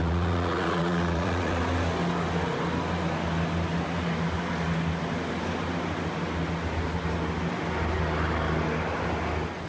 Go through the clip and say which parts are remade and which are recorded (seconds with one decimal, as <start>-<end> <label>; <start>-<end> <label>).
0.0-1.6 remade; 1.6-9.7 recorded